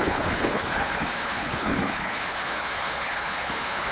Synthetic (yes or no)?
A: yes